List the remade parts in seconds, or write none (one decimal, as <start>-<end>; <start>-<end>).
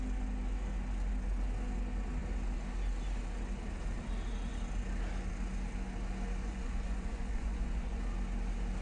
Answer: 6.4-8.0